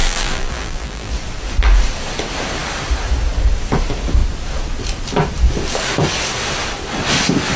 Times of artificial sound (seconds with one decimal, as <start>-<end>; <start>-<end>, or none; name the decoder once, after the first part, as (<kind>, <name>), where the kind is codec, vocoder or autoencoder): 0.0-1.1 (vocoder, BigVGAN v2)